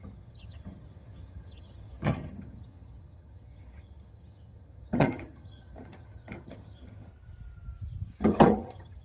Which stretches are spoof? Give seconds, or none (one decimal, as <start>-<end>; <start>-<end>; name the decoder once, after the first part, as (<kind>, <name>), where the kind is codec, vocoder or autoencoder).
0.0-7.1 (vocoder, HiFi-GAN); 8.2-9.0

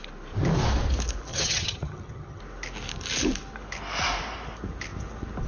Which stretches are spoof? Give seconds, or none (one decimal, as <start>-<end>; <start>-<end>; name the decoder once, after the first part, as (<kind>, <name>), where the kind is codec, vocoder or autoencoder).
1.3-2.4 (vocoder, HiFi-GAN)

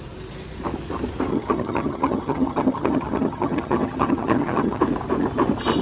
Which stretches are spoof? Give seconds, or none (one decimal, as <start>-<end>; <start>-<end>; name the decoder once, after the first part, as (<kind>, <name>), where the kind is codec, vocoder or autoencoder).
1.3-4.8 (vocoder, HiFi-GAN)

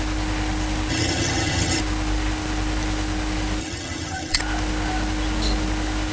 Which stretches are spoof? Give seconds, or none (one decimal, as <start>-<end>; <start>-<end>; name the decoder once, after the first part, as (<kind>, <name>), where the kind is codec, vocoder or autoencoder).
0.9-1.8 (vocoder, HiFi-GAN); 3.6-4.4

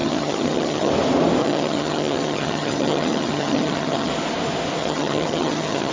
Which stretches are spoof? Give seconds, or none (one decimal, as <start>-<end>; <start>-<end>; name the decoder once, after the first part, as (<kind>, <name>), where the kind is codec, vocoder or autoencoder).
0.0-0.9 (vocoder, HiFi-GAN); 1.4-4.1; 4.8-5.9